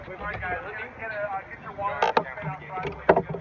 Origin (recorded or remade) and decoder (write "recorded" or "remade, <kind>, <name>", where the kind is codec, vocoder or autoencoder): recorded